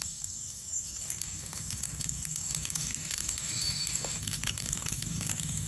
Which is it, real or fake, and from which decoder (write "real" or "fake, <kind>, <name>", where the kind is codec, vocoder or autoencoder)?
fake, codec, DAC